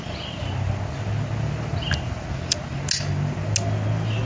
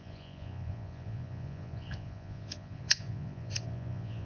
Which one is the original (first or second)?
first